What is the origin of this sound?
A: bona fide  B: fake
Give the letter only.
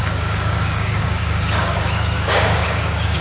B